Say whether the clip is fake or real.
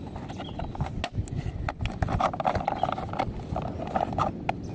real